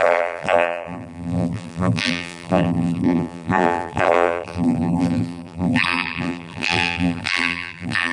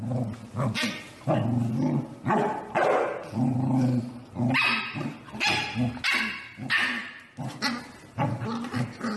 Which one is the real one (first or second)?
second